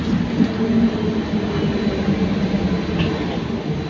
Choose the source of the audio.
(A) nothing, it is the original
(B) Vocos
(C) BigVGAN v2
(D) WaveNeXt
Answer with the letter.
A